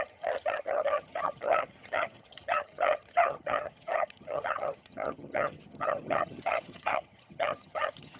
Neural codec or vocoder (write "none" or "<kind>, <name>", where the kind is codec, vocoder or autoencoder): vocoder, HiFi-GAN